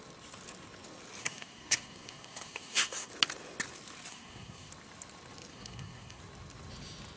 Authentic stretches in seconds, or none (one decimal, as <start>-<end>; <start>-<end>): 0.0-1.2; 3.1-4.1; 4.7-5.5; 6.2-7.2